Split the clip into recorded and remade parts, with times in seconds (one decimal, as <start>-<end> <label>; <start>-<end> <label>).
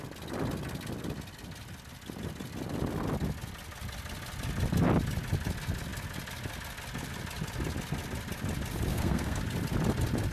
0.0-8.9 recorded; 8.9-9.4 remade; 9.4-10.3 recorded